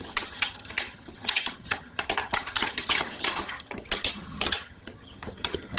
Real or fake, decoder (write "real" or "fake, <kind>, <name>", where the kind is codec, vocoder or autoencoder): fake, vocoder, HiFi-GAN